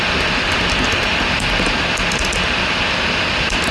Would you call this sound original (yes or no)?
yes